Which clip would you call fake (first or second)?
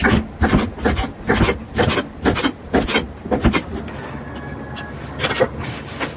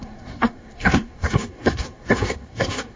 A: second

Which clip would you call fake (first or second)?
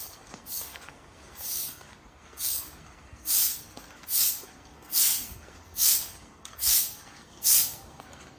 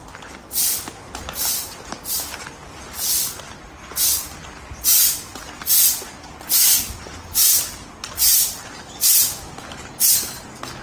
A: first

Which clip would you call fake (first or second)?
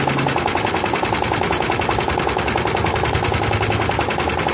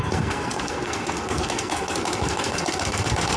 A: second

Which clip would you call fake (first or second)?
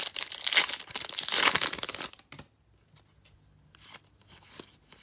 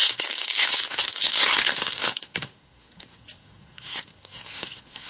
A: second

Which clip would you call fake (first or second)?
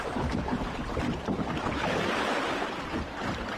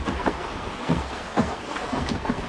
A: second